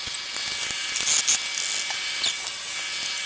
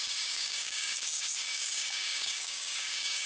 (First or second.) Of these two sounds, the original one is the first